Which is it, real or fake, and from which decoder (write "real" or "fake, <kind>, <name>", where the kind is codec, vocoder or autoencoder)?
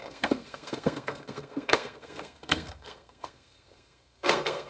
fake, codec, SNAC